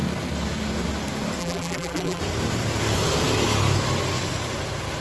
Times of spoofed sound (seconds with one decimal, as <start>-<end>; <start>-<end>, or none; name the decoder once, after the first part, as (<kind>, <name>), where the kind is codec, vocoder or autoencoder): 1.4-2.2 (vocoder, BigVGAN v2)

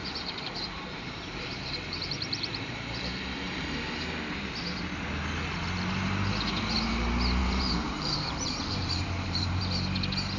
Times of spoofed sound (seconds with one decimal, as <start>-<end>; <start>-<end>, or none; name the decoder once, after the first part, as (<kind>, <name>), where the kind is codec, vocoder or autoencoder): 0.0-3.8 (vocoder, BigVGAN v2); 7.4-9.6

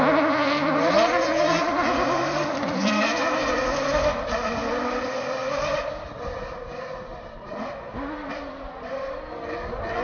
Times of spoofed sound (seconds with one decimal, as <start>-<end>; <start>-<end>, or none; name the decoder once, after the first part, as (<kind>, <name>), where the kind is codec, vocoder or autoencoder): 0.0-5.4 (vocoder, BigVGAN v2); 8.9-10.0